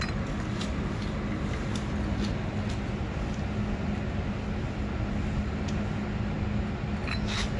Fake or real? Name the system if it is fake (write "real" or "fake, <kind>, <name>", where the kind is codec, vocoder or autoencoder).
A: real